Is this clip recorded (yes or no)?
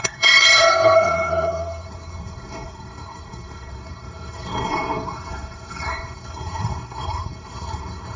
no